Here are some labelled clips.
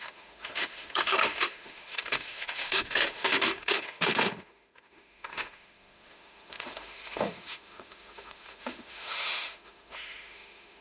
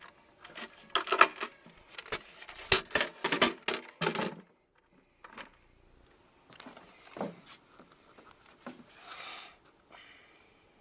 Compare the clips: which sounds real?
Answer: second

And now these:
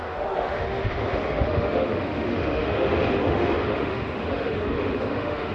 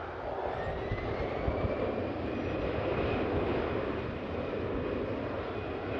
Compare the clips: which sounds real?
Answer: second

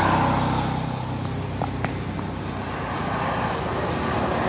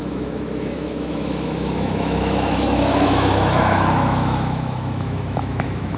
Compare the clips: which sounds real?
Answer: first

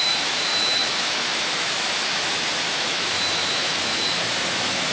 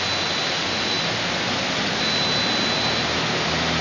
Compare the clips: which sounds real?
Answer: second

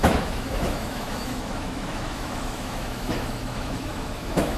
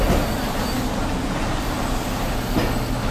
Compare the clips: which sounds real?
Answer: second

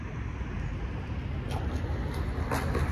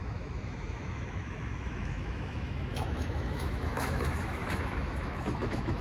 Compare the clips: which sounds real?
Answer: first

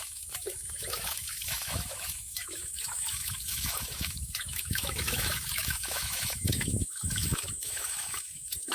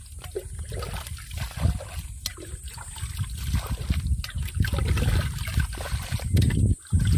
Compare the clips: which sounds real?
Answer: second